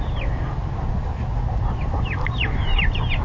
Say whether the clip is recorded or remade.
recorded